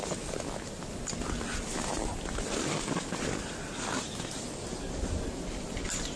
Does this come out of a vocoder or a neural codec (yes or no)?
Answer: no